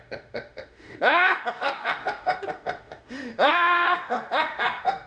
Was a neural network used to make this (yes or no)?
yes